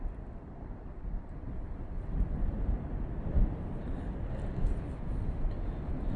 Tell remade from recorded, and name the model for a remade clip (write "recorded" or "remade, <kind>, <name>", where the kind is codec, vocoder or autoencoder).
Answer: recorded